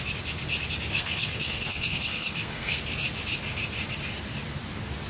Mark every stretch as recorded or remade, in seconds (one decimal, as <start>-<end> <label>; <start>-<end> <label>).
0.0-0.9 recorded; 0.9-2.8 remade; 2.8-5.1 recorded